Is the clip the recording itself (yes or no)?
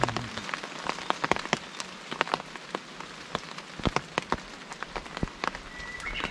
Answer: yes